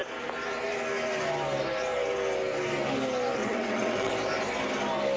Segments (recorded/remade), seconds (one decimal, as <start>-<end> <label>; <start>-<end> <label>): 0.0-3.4 recorded; 3.4-4.1 remade; 4.1-5.2 recorded